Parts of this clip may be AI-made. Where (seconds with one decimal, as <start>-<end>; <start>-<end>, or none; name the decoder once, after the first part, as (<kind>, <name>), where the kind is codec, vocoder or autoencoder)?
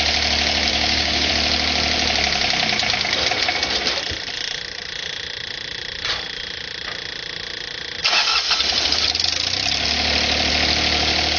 0.7-1.3 (codec, DAC)